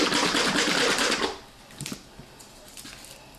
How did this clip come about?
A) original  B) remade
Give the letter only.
A